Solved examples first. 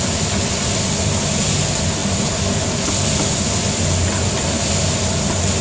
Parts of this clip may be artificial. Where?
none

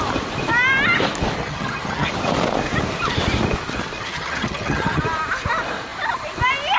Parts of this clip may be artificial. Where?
1.4-2.1 (vocoder, HiFi-GAN); 4.0-5.0

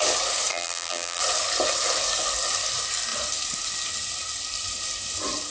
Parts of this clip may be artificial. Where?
0.5-1.2 (vocoder, BigVGAN v2)

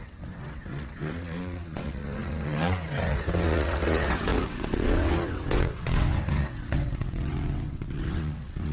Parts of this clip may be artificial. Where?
0.0-8.7 (vocoder, WaveNeXt)

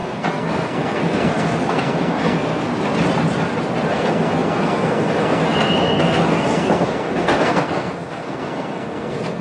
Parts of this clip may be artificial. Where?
0.0-2.7 (codec, SNAC); 3.9-9.4

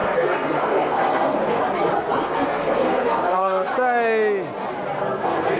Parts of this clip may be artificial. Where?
0.0-1.6 (codec, SNAC); 2.2-3.7; 5.0-5.6

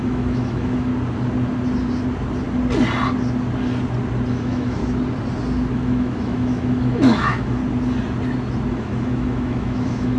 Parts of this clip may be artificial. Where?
0.0-0.9 (autoencoder, DAC-VAE); 4.3-4.8; 5.7-7.6; 8.7-10.2